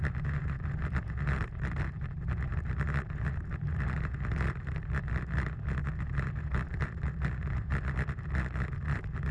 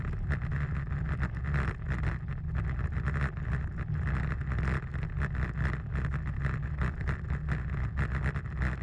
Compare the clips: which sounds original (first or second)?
second